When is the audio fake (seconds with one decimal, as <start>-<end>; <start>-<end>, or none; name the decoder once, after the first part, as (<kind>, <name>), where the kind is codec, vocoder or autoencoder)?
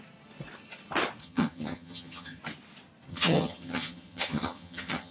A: 1.2-2.4 (vocoder, HiFi-GAN); 3.1-5.1